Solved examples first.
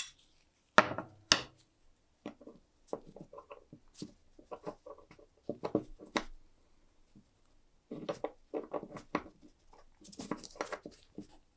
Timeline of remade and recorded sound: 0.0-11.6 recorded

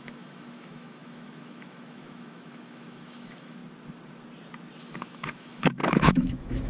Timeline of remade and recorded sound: 0.0-3.6 remade; 3.6-4.8 recorded; 4.8-6.7 remade